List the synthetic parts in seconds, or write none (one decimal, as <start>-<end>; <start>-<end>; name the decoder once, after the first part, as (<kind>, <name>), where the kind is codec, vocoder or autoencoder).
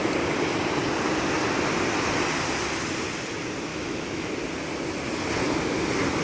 3.7-4.3 (autoencoder, DAC-VAE)